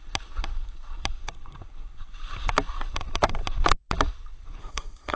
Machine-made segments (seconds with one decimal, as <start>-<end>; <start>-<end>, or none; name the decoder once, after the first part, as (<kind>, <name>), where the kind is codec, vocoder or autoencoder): 4.6-5.2 (codec, SNAC)

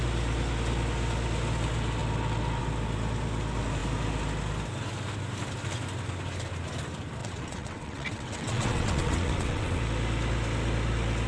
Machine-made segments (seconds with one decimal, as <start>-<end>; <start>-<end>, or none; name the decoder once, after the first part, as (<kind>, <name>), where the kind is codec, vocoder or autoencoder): 7.2-9.8 (vocoder, WaveNeXt)

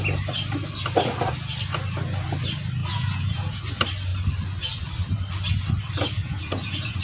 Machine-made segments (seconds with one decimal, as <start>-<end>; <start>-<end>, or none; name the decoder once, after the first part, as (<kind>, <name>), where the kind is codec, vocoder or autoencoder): 2.8-3.6 (vocoder, Vocos); 6.2-7.0

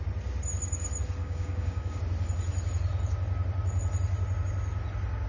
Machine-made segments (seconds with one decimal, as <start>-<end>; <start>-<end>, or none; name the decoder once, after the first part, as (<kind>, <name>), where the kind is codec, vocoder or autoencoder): 1.2-2.0 (codec, DAC)

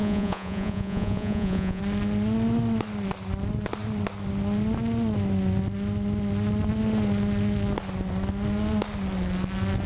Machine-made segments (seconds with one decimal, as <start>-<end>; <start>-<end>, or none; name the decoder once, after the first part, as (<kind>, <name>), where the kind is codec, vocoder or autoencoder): 0.0-1.8 (vocoder, Vocos)